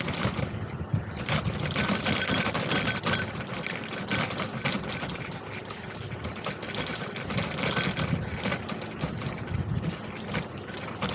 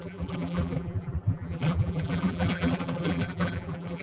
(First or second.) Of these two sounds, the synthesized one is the second